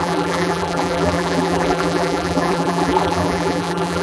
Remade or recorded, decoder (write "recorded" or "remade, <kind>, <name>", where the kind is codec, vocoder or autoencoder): remade, vocoder, BigVGAN v2